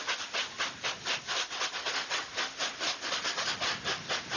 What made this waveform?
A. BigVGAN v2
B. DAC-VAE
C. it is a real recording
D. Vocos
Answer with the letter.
C